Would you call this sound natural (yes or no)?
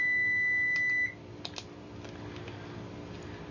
yes